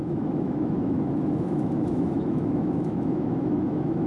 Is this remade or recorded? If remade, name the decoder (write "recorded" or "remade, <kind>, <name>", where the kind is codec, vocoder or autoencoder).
remade, autoencoder, DAC-VAE